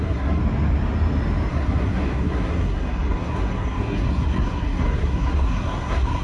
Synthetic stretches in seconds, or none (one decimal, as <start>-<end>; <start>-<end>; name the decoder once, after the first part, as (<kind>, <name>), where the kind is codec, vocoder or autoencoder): 0.0-0.4 (codec, SNAC); 1.5-6.2